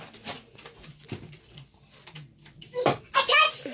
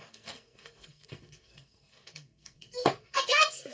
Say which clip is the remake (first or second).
second